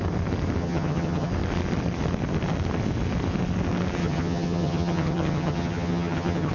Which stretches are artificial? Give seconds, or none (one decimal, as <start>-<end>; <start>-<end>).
0.6-1.3; 4.0-6.5